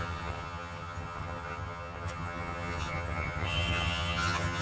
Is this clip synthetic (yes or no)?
yes